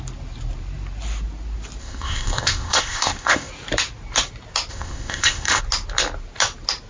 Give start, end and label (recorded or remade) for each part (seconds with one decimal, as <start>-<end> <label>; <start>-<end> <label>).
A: 0.0-1.8 recorded; 1.8-3.5 remade; 3.5-4.7 recorded; 4.7-5.6 remade; 5.6-6.9 recorded